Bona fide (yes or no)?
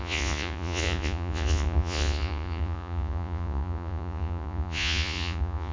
no